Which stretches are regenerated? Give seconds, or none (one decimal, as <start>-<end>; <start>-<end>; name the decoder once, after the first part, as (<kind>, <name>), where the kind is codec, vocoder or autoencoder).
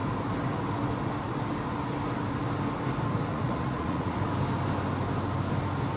3.3-4.2 (vocoder, Vocos)